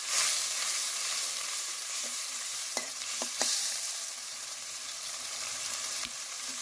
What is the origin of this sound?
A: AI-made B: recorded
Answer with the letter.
A